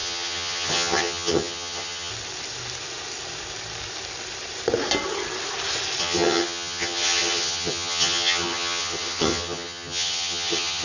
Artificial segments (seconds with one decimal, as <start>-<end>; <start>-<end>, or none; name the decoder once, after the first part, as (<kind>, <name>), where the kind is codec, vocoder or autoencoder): 0.0-2.1 (vocoder, HiFi-GAN); 6.0-10.8